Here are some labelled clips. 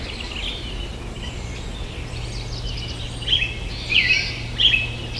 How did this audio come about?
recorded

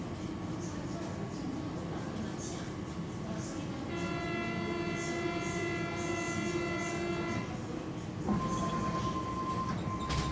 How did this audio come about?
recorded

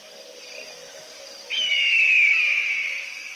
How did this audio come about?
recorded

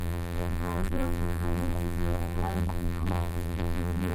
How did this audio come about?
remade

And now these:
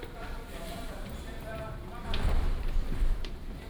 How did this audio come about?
remade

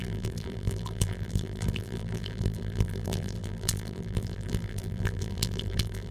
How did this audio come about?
remade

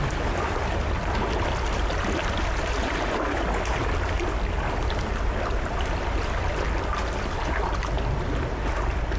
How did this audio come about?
recorded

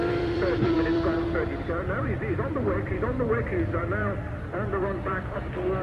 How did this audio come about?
remade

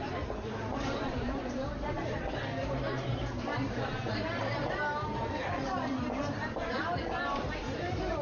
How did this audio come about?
remade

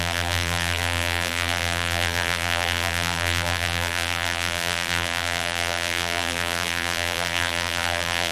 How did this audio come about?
remade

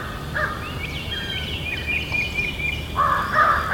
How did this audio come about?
recorded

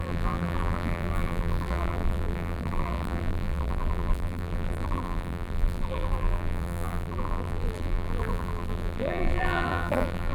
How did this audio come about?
remade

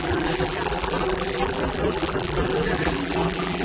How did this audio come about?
remade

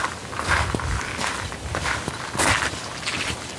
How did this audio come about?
recorded